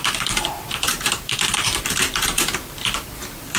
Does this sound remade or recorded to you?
remade